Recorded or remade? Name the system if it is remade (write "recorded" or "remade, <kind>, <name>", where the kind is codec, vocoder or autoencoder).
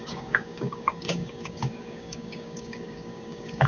remade, codec, DAC